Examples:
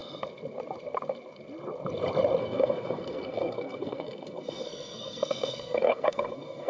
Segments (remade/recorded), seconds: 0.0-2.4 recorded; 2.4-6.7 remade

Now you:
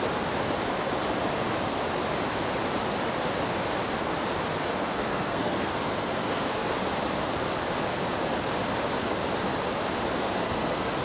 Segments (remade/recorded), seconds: 0.0-4.6 recorded; 4.6-6.8 remade; 6.8-10.2 recorded; 10.2-11.0 remade

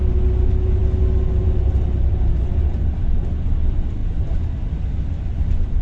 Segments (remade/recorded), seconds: 0.0-5.8 recorded